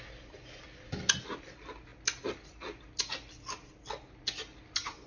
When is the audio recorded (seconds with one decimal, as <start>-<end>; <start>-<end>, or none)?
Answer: 0.0-5.1